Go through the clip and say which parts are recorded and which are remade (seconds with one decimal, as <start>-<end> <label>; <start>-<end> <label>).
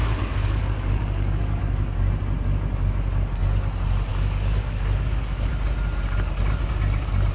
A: 0.0-1.6 remade; 1.6-4.1 recorded; 4.1-5.5 remade; 5.5-7.3 recorded